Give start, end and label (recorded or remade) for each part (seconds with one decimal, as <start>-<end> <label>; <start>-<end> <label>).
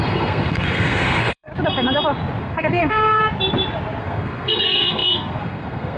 0.0-1.5 remade; 1.5-2.4 recorded; 2.4-3.2 remade; 3.2-4.0 recorded; 4.0-6.0 remade